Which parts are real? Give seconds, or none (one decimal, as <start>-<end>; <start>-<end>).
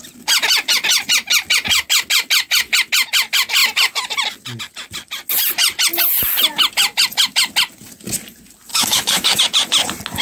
0.0-8.7; 9.4-10.2